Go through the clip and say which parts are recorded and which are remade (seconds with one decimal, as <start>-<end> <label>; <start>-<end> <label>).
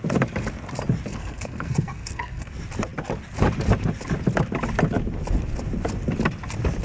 0.0-1.1 recorded; 1.1-2.5 remade; 2.5-6.8 recorded